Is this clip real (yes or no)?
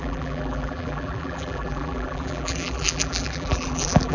no